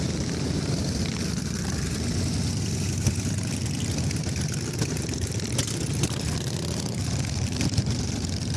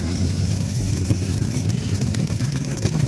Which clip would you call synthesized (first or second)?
second